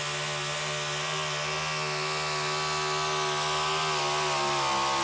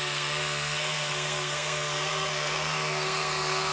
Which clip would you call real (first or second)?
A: first